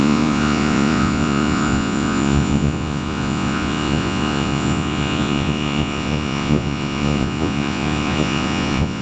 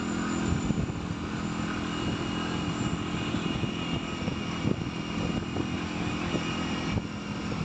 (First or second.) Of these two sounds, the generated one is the first